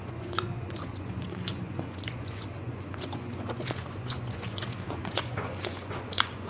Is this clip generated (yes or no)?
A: yes